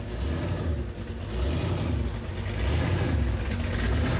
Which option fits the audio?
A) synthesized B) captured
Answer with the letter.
B